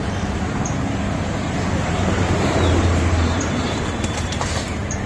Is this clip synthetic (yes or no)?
yes